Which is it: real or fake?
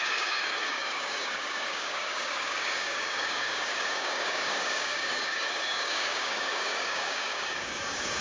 fake